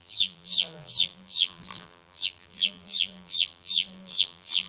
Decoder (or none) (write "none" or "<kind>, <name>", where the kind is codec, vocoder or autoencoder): vocoder, BigVGAN v2